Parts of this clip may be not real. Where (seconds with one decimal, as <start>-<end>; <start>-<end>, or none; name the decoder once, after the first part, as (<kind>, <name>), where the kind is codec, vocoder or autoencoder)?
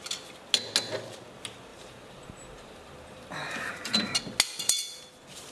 1.7-4.2 (vocoder, BigVGAN v2)